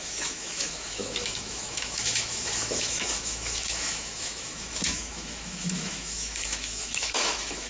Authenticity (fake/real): fake